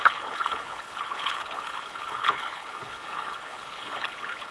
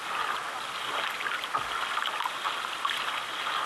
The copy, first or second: first